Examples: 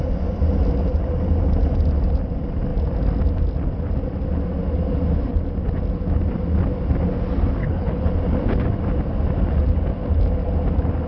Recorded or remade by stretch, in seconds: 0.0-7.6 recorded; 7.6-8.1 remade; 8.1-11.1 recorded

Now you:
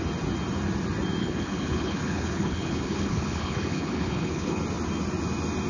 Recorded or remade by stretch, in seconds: 0.0-1.2 recorded; 1.2-4.6 remade; 4.6-5.7 recorded

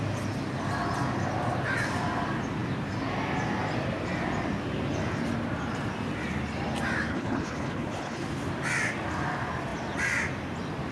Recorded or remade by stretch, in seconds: 0.0-7.1 recorded; 7.1-8.2 remade; 8.2-10.9 recorded